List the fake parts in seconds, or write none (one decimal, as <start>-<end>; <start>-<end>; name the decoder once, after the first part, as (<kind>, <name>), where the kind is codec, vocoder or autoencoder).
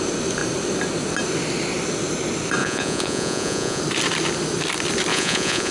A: 2.6-3.8 (vocoder, Vocos); 5.1-5.7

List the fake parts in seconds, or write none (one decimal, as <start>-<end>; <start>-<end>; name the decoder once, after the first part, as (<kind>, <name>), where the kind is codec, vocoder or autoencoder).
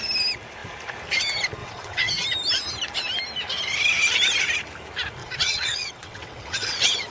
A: 1.6-2.1 (vocoder, WaveNeXt); 5.2-7.1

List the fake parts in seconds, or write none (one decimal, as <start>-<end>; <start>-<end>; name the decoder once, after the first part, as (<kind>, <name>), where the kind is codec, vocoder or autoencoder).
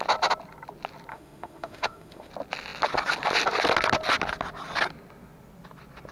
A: 1.1-2.3 (autoencoder, DAC-VAE)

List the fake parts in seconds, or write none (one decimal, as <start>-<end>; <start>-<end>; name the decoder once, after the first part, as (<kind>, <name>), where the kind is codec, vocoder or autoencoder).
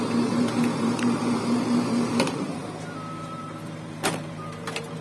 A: 0.0-2.6 (vocoder, BigVGAN v2); 3.2-5.0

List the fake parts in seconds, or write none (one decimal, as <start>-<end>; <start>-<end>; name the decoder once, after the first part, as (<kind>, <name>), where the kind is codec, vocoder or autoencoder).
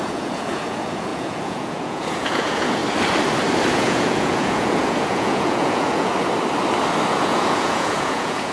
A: 0.0-2.8 (vocoder, Vocos); 3.7-6.1; 7.1-8.5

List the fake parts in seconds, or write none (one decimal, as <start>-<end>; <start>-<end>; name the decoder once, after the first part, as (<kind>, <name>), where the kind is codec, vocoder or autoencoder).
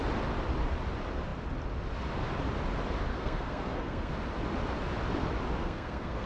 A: 3.1-4.1 (codec, SNAC); 5.6-6.3